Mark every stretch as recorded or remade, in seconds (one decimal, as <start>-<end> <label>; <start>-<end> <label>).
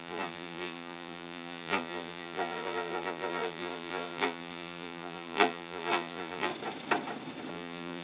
0.0-6.5 remade; 6.5-7.5 recorded; 7.5-8.0 remade